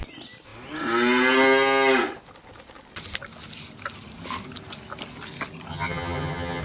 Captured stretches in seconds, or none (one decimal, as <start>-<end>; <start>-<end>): 0.0-5.7